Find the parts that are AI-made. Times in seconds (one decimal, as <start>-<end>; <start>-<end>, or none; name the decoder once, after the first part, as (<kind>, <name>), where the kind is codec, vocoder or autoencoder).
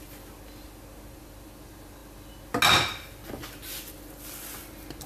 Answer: none